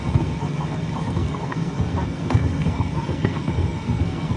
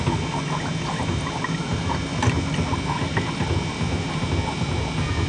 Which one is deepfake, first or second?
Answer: first